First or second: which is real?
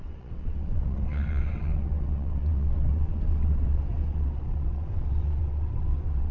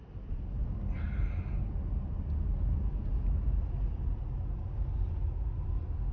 second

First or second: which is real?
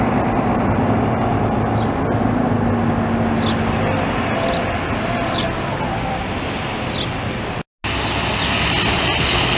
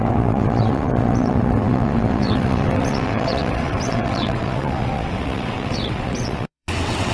first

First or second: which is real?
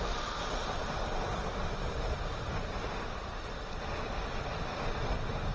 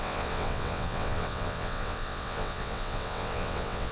first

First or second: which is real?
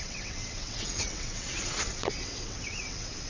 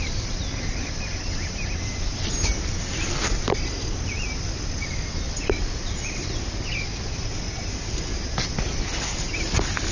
second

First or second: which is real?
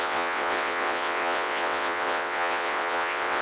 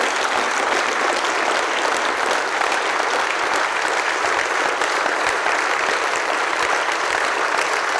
second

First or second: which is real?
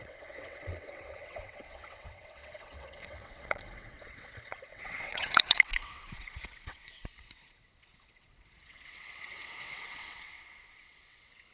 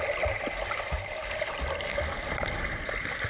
second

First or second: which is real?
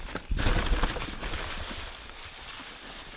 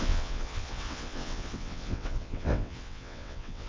first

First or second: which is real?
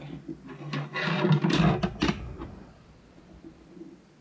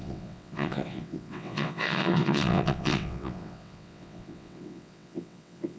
first